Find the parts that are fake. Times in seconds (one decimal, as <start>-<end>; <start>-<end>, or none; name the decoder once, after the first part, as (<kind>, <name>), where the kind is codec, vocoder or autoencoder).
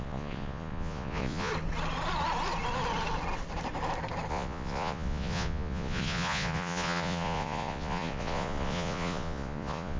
0.0-1.5 (vocoder, Vocos); 4.3-10.0